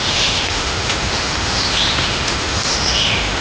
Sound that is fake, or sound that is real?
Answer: fake